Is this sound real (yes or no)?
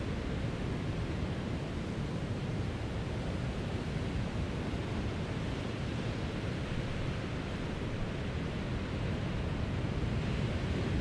yes